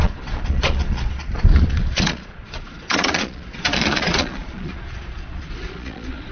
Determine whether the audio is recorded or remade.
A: remade